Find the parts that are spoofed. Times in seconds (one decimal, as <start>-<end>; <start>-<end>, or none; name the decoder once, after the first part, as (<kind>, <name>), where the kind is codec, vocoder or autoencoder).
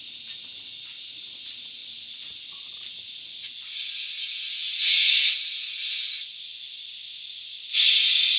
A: none